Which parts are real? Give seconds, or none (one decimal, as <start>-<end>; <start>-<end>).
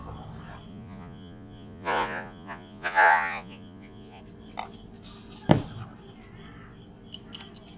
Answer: 0.0-0.7; 4.2-7.8